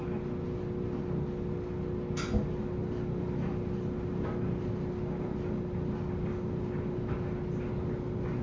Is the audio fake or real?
real